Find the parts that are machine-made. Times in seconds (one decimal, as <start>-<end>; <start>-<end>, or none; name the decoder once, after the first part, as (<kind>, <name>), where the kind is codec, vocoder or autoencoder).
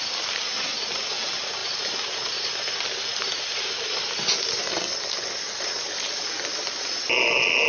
none